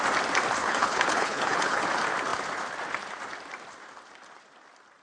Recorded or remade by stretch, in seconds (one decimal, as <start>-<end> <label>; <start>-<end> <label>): 0.0-0.6 recorded; 0.6-1.8 remade; 1.8-5.0 recorded